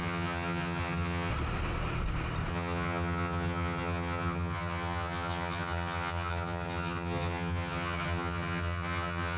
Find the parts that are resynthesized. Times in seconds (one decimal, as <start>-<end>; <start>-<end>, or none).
0.0-1.3; 2.5-9.4